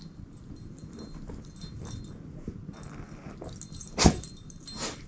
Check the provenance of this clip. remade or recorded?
recorded